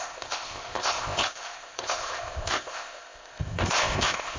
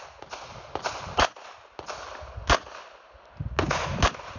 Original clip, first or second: second